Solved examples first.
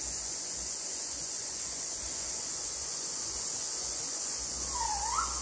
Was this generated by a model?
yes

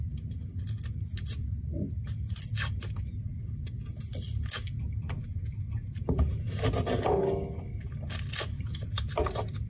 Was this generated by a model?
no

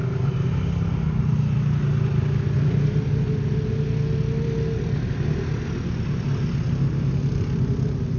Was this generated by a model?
no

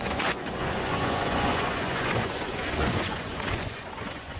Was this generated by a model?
yes